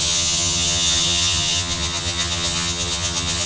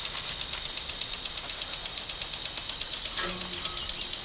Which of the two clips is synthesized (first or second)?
first